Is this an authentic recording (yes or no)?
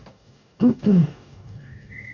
no